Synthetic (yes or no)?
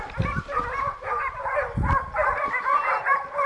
no